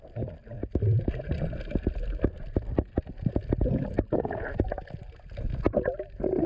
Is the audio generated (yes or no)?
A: no